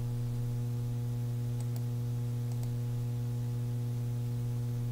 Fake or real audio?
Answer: real